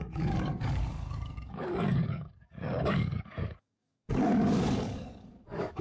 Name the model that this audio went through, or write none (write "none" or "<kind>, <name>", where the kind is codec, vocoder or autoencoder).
codec, DAC